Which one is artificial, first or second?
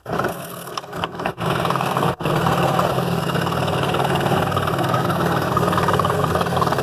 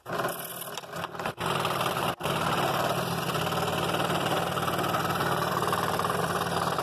first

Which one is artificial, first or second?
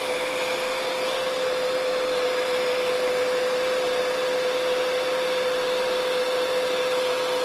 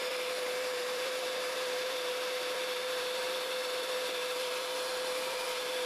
second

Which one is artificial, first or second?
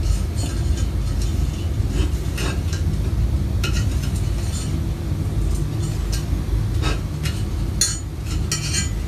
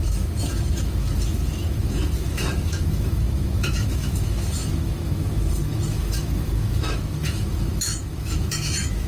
second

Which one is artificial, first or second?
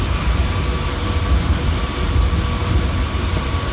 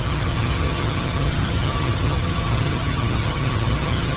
second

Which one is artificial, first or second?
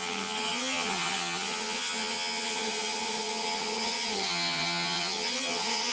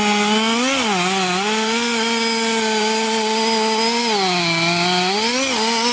first